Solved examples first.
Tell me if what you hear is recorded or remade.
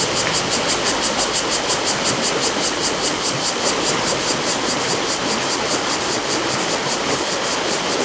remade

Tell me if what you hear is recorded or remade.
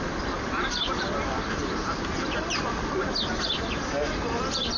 remade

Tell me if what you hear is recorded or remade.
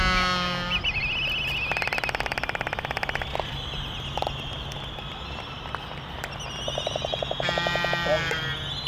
recorded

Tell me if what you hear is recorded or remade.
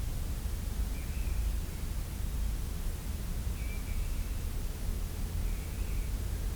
recorded